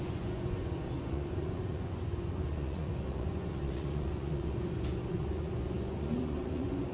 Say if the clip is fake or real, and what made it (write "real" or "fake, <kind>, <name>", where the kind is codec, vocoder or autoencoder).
fake, vocoder, Vocos